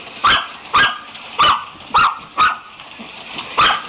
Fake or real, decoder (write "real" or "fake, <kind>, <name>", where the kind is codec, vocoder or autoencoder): real